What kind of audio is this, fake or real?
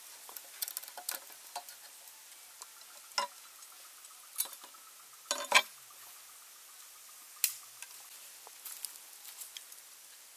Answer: real